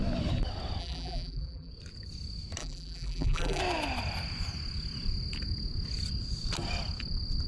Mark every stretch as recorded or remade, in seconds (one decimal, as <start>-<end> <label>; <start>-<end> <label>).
0.0-0.8 recorded; 0.8-1.7 remade; 1.7-2.6 recorded; 2.6-3.6 remade; 3.6-7.5 recorded